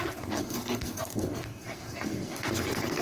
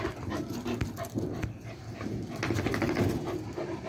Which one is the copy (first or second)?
first